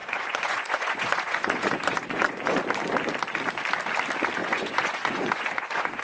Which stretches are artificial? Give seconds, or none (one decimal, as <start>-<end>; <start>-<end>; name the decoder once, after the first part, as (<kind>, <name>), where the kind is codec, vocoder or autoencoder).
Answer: 0.0-2.6 (vocoder, Vocos); 4.4-6.0